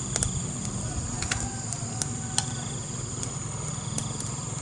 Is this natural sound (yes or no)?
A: yes